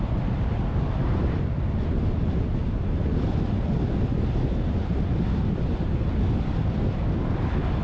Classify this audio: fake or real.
real